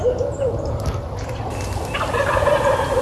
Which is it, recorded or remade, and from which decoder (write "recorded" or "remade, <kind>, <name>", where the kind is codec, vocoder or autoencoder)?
recorded